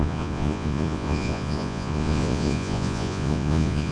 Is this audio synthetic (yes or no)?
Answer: yes